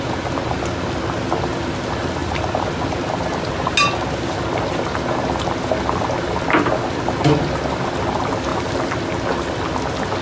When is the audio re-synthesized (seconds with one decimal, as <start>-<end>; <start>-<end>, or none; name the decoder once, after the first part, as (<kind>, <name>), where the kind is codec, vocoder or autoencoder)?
none